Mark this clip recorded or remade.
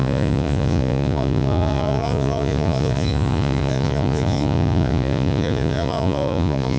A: remade